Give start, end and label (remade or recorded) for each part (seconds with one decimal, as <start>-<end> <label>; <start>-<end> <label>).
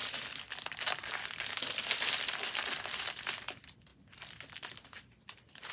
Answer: 0.0-5.7 recorded